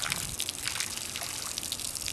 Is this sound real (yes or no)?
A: yes